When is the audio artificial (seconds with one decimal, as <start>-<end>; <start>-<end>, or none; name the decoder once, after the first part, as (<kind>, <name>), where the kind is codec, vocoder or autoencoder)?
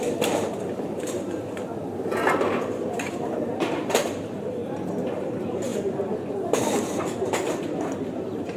0.0-1.7 (vocoder, BigVGAN v2); 2.2-4.6; 5.1-8.6